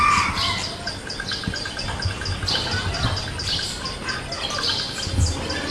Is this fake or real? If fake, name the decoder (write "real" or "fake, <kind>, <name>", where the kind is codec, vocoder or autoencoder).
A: real